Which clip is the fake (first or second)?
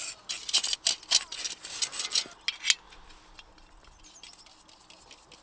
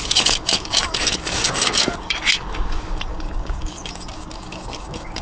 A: second